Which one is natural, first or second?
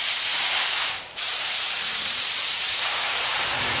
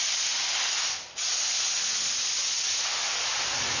second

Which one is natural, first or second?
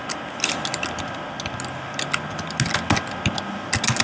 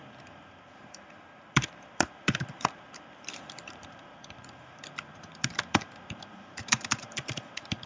first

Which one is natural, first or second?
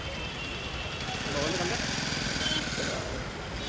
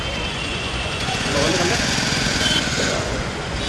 first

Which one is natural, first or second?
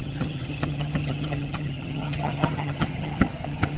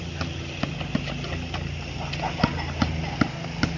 second